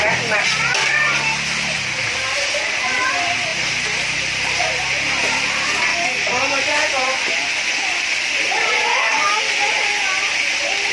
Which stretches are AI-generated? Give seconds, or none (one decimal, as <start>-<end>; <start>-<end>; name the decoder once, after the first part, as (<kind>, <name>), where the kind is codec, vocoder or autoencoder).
5.9-6.6 (codec, DAC); 8.9-9.4